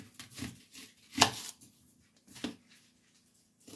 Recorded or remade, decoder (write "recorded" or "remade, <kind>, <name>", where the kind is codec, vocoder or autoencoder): recorded